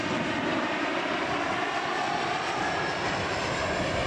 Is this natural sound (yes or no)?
no